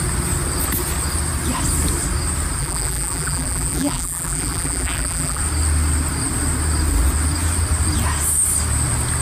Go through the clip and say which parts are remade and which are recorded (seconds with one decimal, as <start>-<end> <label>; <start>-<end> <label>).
0.0-2.6 recorded; 2.6-5.4 remade; 5.4-9.2 recorded